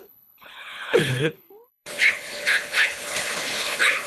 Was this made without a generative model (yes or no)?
no